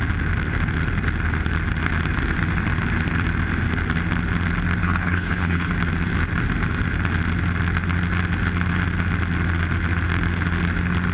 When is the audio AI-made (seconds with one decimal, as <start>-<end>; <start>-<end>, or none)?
4.8-5.7